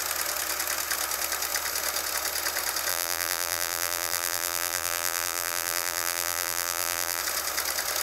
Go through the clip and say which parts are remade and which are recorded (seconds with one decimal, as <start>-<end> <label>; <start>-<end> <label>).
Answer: 0.0-2.9 recorded; 2.9-7.2 remade; 7.2-8.0 recorded